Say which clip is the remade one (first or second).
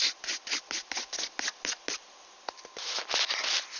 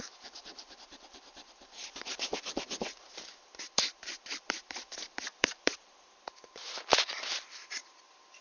second